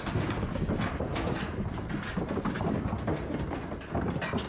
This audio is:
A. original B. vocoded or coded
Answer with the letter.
A